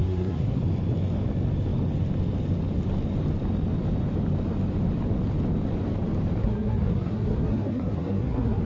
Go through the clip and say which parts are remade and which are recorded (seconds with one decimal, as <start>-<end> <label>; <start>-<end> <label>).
0.0-0.6 remade; 0.6-6.4 recorded; 6.4-8.6 remade

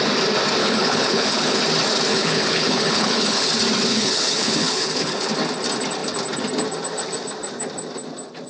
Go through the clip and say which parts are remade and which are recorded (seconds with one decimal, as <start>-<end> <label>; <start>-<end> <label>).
0.0-0.6 recorded; 0.6-1.6 remade; 1.6-2.1 recorded; 2.1-3.5 remade; 3.5-3.9 recorded; 3.9-5.3 remade; 5.3-8.5 recorded

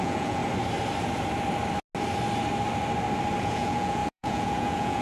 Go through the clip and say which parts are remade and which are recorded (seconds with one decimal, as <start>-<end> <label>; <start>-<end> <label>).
0.0-0.4 remade; 0.4-3.4 recorded; 3.4-5.0 remade

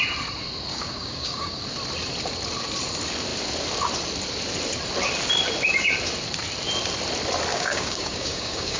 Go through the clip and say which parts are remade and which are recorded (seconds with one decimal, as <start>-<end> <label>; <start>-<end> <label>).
0.0-0.7 recorded; 0.7-1.6 remade; 1.6-7.5 recorded; 7.5-8.8 remade

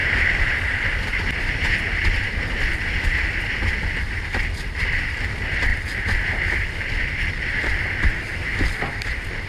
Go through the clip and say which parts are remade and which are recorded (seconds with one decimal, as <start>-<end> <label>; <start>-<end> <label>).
0.0-2.4 remade; 2.4-9.5 recorded